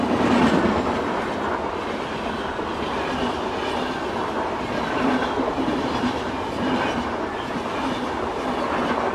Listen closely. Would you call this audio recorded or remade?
recorded